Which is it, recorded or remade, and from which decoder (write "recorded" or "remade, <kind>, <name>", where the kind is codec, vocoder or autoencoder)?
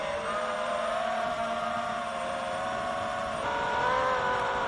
remade, vocoder, BigVGAN v2